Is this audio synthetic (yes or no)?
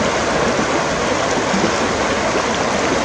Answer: no